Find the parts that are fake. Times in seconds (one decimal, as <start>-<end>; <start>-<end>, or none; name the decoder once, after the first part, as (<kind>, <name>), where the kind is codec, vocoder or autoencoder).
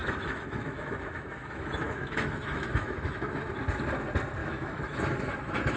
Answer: 0.0-3.5 (autoencoder, DAC-VAE); 4.4-5.8